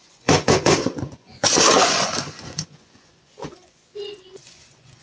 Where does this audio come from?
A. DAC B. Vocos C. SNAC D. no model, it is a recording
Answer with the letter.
B